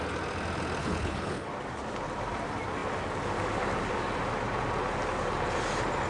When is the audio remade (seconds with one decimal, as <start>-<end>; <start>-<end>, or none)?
0.8-1.5

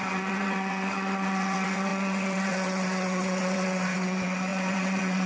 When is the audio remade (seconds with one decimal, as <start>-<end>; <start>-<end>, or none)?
0.0-5.3

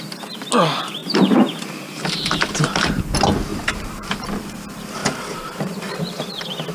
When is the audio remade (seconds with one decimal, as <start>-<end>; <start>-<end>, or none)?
1.0-3.0; 3.5-4.2; 5.0-6.3

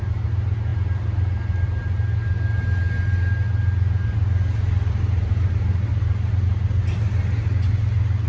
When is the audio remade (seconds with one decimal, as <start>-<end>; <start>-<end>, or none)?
none

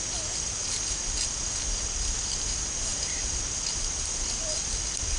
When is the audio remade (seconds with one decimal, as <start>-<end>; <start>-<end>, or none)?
none

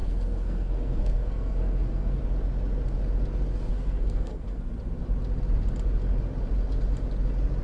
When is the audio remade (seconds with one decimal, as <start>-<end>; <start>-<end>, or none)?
0.0-2.2; 3.7-4.6